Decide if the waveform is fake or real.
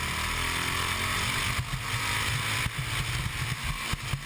real